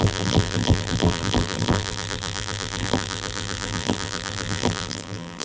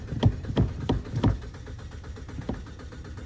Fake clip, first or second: first